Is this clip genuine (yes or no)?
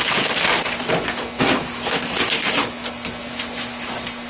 yes